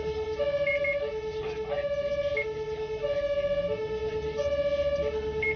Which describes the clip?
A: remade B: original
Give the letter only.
B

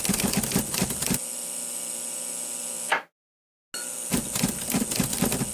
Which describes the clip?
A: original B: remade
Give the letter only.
A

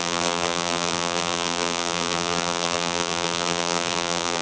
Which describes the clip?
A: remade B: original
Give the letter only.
A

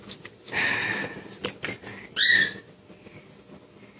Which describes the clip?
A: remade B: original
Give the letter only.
B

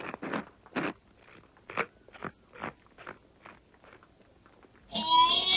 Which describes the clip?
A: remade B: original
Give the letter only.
B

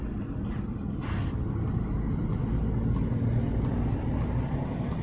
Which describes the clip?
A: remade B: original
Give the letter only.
B